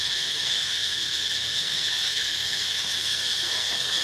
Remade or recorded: remade